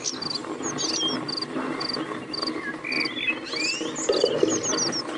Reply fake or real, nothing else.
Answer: real